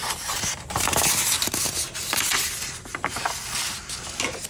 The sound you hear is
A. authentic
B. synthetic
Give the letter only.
A